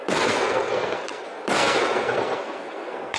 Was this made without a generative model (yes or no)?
no